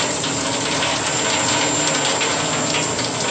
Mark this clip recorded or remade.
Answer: recorded